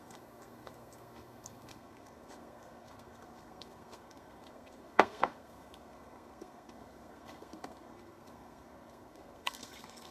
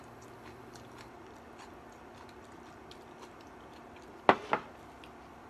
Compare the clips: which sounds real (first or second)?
second